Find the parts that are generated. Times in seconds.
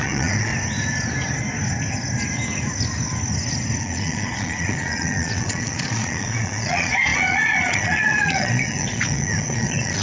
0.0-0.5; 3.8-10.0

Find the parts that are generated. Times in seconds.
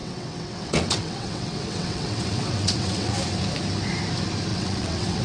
0.0-3.1; 4.5-5.2